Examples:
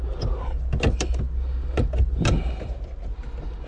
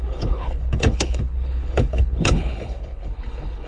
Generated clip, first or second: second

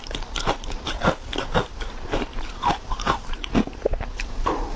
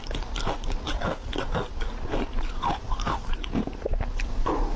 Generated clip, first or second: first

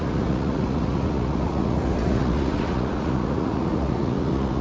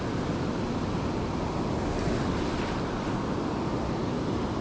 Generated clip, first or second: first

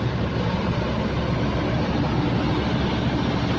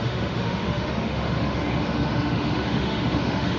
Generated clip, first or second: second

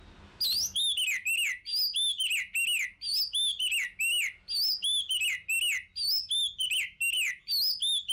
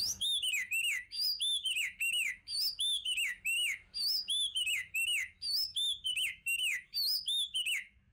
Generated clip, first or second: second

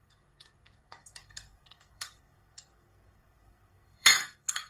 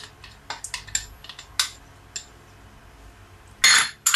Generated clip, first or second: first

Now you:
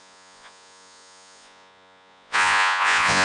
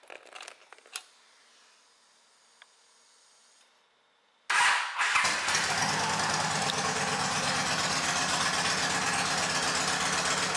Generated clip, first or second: first